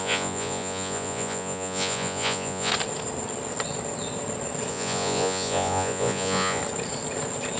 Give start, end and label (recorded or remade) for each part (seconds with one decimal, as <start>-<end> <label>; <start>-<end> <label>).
0.0-2.7 remade; 2.7-4.7 recorded; 4.7-6.6 remade; 6.6-7.6 recorded